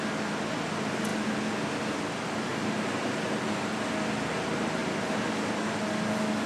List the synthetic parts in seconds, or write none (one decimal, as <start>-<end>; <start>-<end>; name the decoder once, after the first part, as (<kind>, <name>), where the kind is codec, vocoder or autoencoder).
2.5-3.4 (vocoder, BigVGAN v2)